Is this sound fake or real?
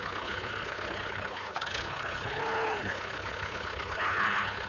fake